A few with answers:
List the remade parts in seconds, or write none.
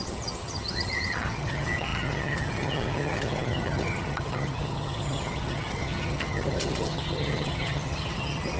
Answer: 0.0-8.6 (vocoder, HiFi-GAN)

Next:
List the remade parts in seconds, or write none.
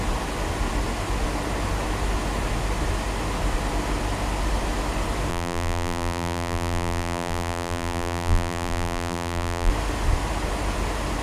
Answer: 5.3-9.7 (vocoder, BigVGAN v2)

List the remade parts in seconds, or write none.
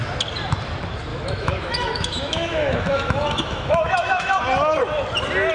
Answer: 1.1-4.4 (autoencoder, DAC-VAE)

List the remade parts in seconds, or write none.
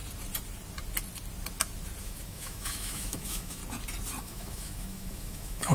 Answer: 2.0-3.6 (autoencoder, DAC-VAE); 4.2-5.7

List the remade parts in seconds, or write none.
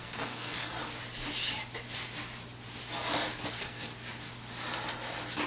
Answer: 0.0-0.8 (codec, SNAC); 3.5-3.9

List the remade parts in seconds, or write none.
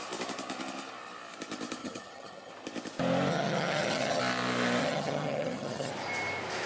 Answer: 1.8-2.5 (vocoder, HiFi-GAN); 3.3-4.2; 4.8-5.9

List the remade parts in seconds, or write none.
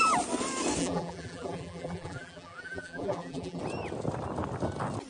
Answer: 0.8-3.6 (vocoder, BigVGAN v2)